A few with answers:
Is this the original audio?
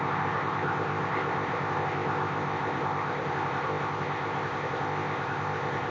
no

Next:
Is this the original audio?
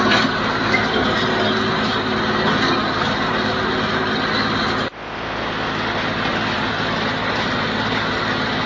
yes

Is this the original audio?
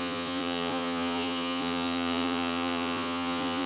no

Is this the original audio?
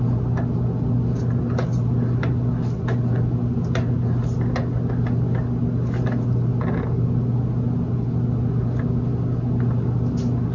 yes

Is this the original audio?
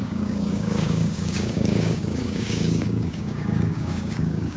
no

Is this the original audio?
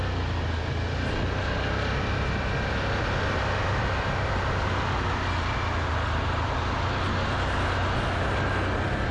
yes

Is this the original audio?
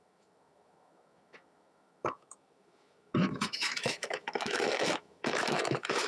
no